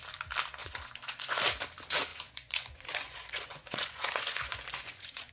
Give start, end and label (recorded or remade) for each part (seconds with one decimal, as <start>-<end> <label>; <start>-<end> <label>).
0.0-0.6 recorded; 0.6-1.4 remade; 1.4-2.1 recorded; 2.1-5.3 remade